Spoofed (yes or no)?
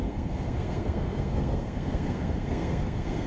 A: yes